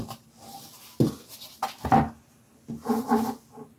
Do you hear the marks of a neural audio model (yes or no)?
no